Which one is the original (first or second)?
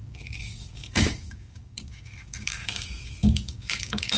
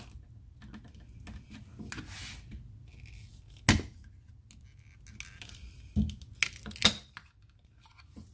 second